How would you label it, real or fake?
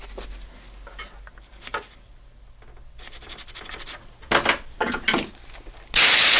real